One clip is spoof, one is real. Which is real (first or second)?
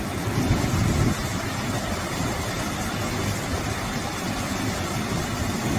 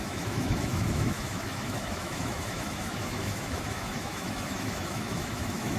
first